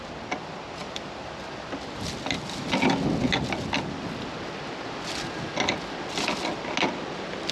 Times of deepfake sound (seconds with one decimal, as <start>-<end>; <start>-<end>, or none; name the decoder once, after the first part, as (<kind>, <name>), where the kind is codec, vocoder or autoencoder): none